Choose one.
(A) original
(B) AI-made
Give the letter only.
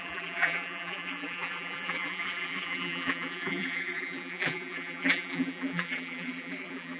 B